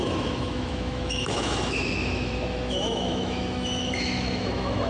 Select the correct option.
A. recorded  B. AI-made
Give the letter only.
B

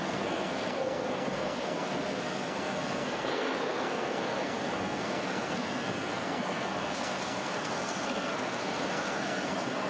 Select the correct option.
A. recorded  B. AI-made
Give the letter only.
B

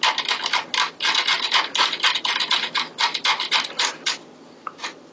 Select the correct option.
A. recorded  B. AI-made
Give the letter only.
A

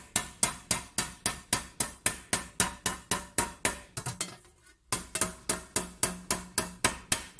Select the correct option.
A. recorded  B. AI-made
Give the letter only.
A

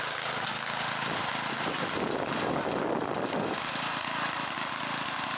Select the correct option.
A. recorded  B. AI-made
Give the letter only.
A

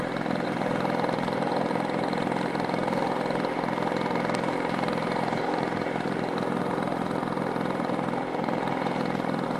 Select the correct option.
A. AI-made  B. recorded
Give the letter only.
A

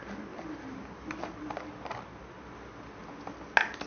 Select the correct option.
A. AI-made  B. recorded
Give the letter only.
B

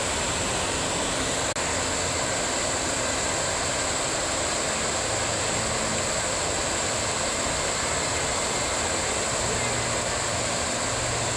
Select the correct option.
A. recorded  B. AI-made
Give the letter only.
A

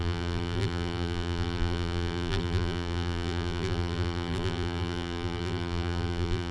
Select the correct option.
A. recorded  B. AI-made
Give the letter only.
B